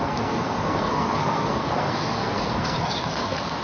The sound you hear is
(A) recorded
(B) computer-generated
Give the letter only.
B